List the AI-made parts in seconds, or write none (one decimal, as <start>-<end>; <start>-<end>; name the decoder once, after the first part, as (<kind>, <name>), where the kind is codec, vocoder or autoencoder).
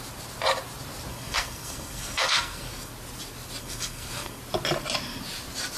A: 1.1-2.9 (codec, SNAC); 3.6-4.4